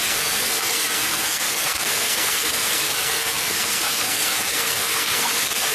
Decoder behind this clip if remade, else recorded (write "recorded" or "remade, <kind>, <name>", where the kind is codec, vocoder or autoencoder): remade, codec, SNAC